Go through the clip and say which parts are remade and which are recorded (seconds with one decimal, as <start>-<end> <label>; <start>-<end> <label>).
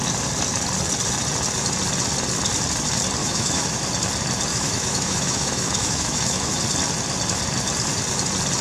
0.0-3.2 recorded; 3.2-3.8 remade; 3.8-4.5 recorded; 4.5-6.6 remade; 6.6-8.6 recorded